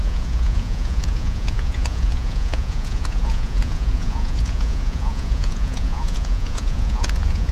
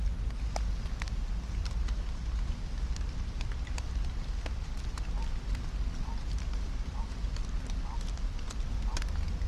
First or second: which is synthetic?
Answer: first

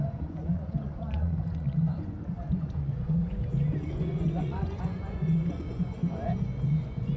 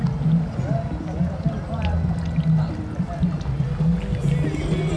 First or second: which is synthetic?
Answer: first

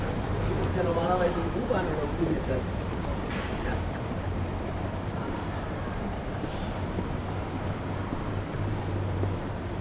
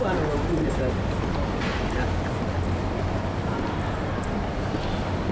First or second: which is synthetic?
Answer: first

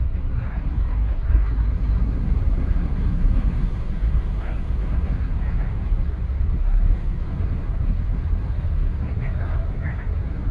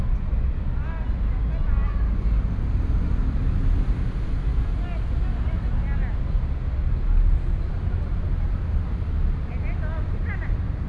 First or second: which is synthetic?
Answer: first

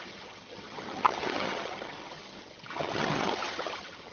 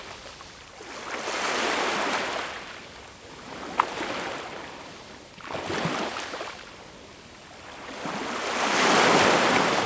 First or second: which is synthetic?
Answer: first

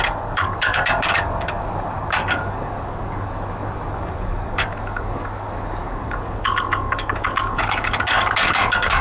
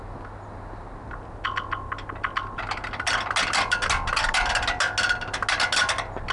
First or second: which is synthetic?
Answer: first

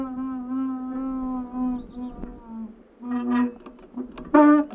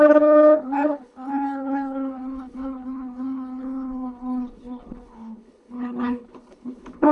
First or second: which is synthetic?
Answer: second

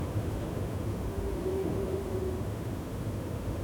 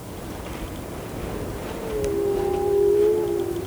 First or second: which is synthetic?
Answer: first